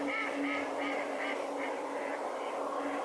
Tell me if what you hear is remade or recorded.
recorded